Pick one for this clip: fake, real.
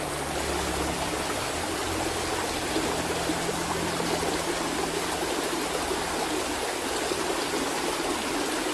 real